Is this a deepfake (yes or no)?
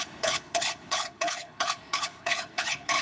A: yes